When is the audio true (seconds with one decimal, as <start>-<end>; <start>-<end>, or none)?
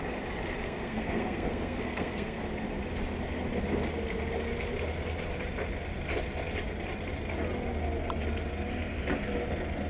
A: 0.0-0.6; 2.4-9.9